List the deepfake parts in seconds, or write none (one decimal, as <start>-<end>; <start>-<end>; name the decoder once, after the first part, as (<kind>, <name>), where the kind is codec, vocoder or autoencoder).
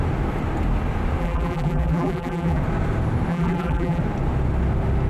1.2-2.6 (vocoder, BigVGAN v2); 3.3-4.0